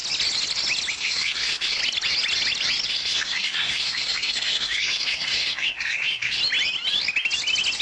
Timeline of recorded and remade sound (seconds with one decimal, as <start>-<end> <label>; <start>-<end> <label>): 0.0-0.9 recorded; 0.9-1.8 remade; 1.8-2.9 recorded; 2.9-6.4 remade; 6.4-7.8 recorded